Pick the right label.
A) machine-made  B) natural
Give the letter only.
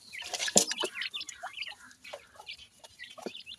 A